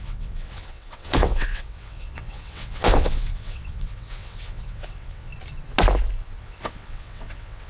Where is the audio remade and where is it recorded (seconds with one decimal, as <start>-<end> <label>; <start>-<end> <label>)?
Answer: 0.0-5.3 remade; 5.3-6.4 recorded; 6.4-7.7 remade